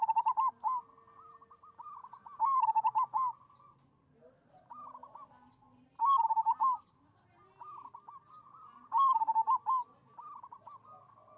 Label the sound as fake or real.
real